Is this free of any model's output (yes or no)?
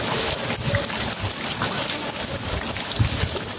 yes